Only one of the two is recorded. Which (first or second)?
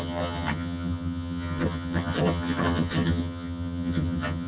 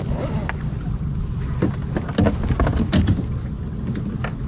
second